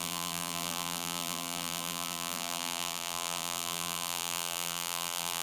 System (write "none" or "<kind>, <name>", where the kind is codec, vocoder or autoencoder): vocoder, BigVGAN v2